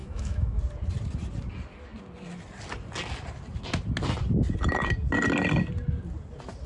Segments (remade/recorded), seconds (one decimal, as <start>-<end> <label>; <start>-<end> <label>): 0.0-0.6 remade; 0.6-6.7 recorded